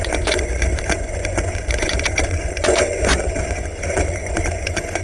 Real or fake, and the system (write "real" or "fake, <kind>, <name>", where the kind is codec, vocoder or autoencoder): fake, vocoder, Vocos